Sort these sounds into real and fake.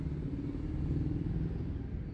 real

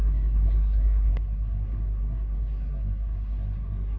fake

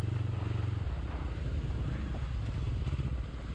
real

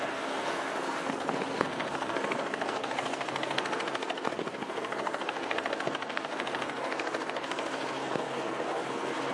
fake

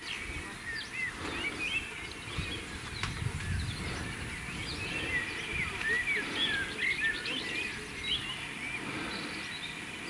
real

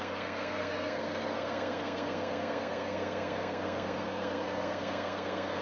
fake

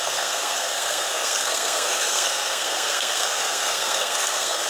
fake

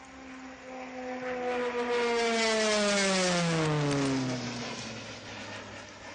real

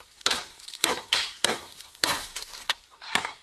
fake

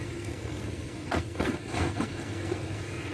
fake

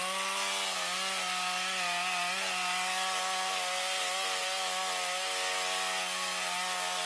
real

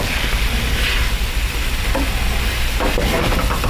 real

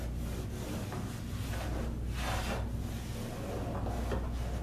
real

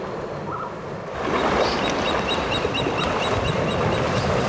real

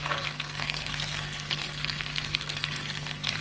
fake